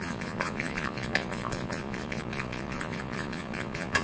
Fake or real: fake